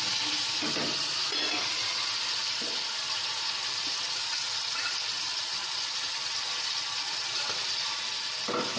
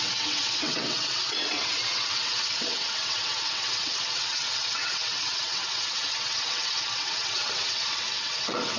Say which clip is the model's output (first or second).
second